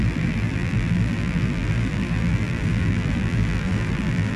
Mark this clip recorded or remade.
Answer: remade